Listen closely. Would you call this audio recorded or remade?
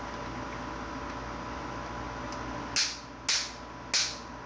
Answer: recorded